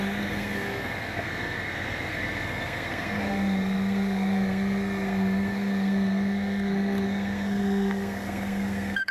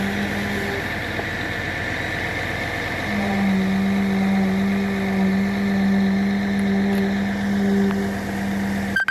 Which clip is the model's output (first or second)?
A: first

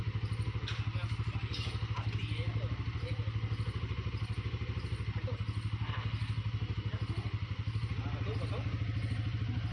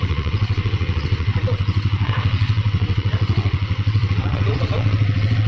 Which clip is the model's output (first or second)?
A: second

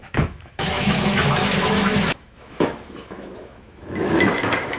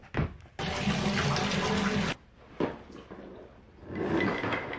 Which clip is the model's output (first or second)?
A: first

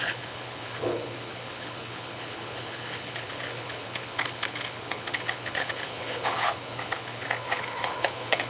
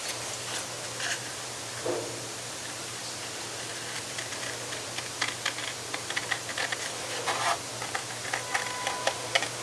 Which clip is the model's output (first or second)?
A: first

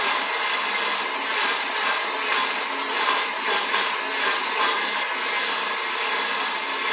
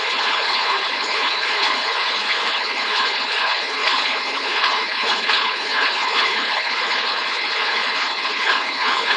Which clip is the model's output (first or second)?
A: second